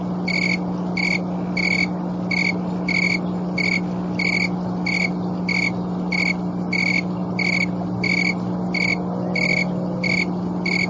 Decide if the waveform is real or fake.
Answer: real